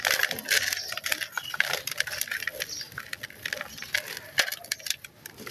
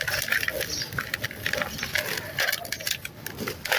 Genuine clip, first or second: first